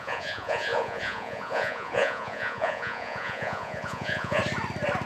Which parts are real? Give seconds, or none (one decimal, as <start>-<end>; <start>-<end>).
4.4-5.1